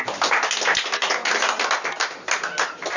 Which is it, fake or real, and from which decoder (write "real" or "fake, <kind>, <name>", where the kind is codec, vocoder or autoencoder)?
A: real